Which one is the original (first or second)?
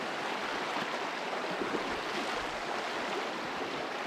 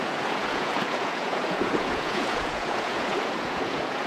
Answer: first